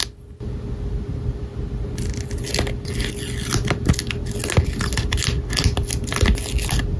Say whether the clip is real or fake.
real